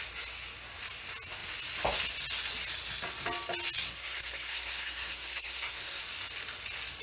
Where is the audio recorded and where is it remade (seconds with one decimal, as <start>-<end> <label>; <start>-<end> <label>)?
0.0-3.8 recorded; 3.8-6.0 remade; 6.0-7.0 recorded